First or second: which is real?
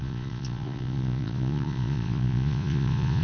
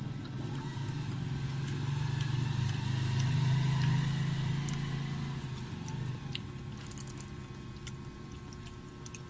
second